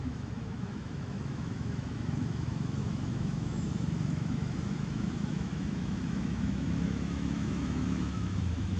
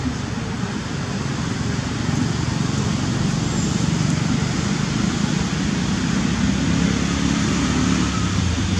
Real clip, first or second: second